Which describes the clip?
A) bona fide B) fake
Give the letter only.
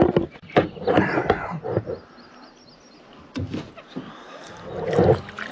A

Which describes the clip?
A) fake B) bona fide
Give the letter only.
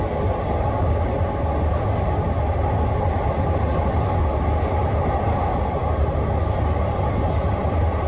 B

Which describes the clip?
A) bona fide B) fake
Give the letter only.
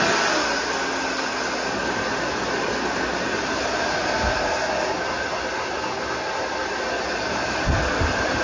A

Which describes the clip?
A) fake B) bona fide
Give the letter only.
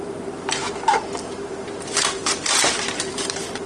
A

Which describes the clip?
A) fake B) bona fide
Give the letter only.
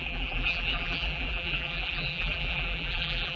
A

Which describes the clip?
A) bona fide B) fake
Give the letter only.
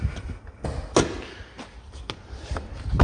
A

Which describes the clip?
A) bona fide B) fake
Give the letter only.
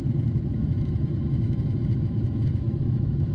B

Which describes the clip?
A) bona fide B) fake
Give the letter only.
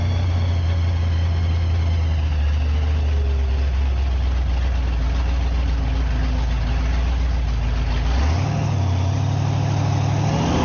A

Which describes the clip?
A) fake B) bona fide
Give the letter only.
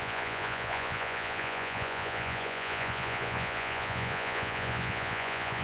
A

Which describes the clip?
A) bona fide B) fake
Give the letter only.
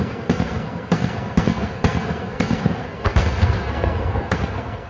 B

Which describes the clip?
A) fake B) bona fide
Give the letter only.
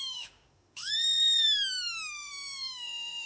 A